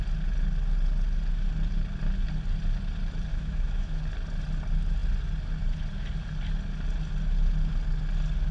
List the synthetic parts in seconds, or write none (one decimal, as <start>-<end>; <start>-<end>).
3.3-4.0